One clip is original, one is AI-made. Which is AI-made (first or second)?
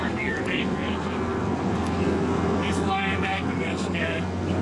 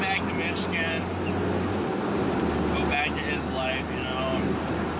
first